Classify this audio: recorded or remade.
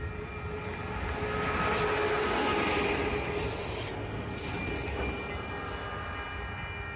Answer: recorded